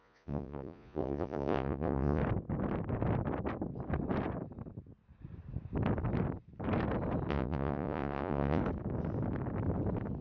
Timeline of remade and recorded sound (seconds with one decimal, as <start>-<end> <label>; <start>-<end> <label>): 0.0-2.2 remade; 2.2-7.3 recorded; 7.3-8.6 remade; 8.6-10.2 recorded